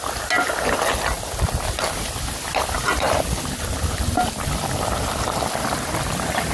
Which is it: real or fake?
real